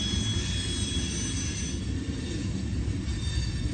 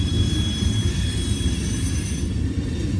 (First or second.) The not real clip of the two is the second